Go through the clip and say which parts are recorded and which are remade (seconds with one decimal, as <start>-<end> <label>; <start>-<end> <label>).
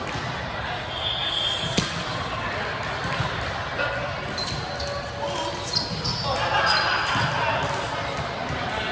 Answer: 0.0-8.9 recorded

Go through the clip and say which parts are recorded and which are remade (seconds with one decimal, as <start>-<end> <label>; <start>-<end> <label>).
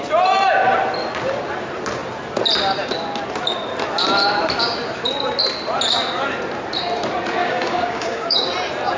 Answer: 0.0-7.4 recorded; 7.4-8.5 remade; 8.5-9.0 recorded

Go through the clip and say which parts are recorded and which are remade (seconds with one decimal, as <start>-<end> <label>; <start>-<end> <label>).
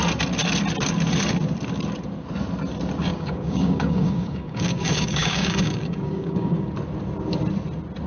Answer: 0.0-3.1 recorded; 3.1-6.7 remade; 6.7-8.1 recorded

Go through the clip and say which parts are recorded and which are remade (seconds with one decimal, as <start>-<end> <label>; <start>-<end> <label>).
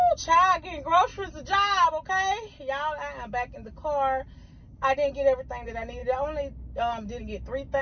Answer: 0.0-7.8 recorded